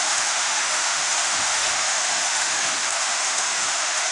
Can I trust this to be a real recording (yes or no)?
no